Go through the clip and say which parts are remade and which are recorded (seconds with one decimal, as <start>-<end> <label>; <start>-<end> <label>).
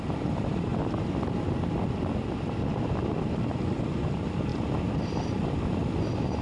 0.0-0.7 remade; 0.7-2.8 recorded; 2.8-6.4 remade